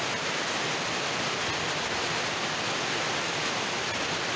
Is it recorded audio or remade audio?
recorded